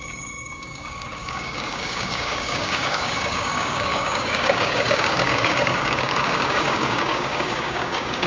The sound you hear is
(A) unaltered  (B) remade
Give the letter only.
B